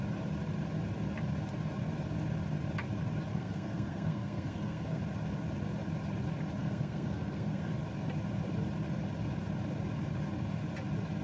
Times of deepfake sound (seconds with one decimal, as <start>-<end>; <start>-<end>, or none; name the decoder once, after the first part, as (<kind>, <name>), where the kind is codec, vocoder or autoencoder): 3.3-5.0 (codec, SNAC); 6.6-7.7